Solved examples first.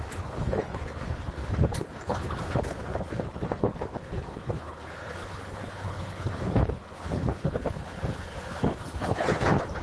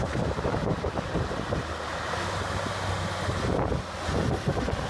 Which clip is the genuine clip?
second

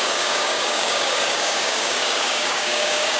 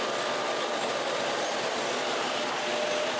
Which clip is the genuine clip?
second